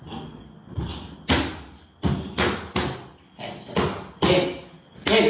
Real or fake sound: real